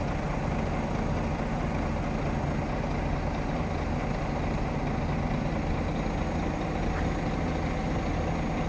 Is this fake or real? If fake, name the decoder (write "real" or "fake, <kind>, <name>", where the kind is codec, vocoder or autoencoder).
real